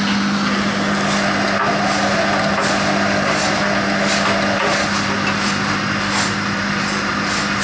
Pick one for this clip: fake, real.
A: real